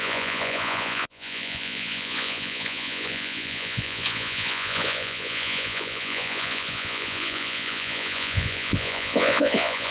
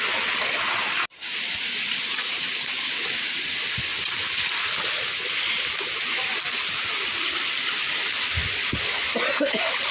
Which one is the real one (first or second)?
second